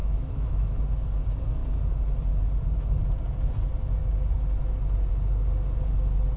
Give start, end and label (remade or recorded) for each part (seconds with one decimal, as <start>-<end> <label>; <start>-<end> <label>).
0.0-0.8 remade; 0.8-6.4 recorded

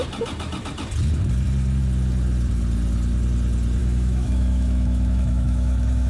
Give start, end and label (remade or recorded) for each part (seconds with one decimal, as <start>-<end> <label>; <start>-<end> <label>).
0.0-3.8 recorded; 3.8-6.1 remade

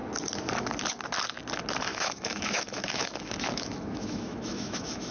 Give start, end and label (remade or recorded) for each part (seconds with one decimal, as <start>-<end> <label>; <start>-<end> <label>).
0.0-1.9 recorded; 1.9-5.1 remade

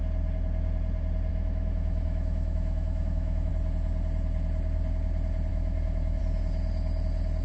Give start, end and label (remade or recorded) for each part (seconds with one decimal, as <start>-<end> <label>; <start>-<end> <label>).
0.0-1.3 recorded; 1.3-3.5 remade; 3.5-5.5 recorded; 5.5-6.2 remade; 6.2-7.4 recorded

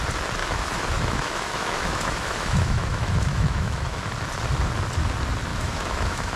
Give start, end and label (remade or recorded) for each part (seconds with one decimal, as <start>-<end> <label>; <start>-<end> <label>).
0.0-0.4 recorded; 0.4-4.1 remade; 4.1-5.5 recorded; 5.5-6.4 remade

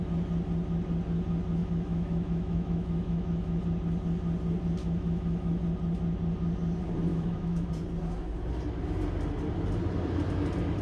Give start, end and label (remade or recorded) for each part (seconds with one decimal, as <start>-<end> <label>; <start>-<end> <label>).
0.0-1.6 recorded; 1.6-3.6 remade; 3.6-4.8 recorded; 4.8-5.6 remade; 5.6-7.1 recorded; 7.1-7.7 remade; 7.7-10.8 recorded